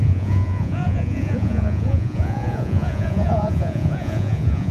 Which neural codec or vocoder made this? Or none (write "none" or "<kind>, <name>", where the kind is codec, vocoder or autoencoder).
vocoder, Vocos